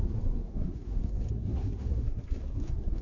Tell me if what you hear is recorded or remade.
remade